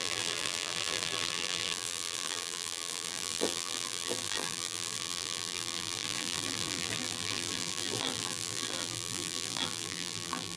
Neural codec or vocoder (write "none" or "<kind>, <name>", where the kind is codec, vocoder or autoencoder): vocoder, BigVGAN v2